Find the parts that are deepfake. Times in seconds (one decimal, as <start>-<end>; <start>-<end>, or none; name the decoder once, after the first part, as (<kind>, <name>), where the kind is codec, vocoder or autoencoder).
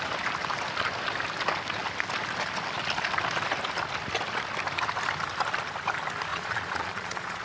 6.3-7.4 (vocoder, Vocos)